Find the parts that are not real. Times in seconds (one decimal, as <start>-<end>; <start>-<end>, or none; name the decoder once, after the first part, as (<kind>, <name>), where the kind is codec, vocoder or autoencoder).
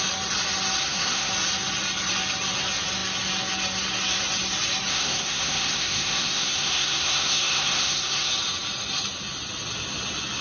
0.8-1.3 (codec, SNAC); 4.9-8.3